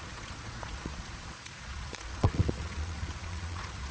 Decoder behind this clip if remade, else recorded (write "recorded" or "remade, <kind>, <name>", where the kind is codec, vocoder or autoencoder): remade, vocoder, Vocos